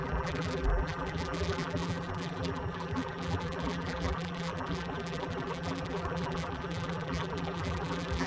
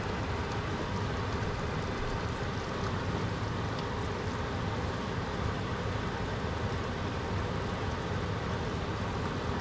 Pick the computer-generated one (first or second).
first